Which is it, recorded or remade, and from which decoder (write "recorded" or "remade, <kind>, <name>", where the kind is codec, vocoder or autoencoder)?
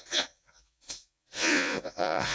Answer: remade, vocoder, Vocos